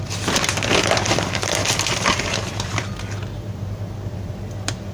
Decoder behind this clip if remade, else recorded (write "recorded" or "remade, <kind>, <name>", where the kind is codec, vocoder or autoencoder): remade, vocoder, BigVGAN v2